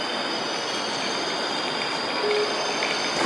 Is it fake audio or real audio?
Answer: real